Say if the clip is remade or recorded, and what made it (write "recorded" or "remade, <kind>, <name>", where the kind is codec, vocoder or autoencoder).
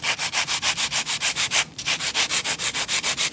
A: remade, vocoder, BigVGAN v2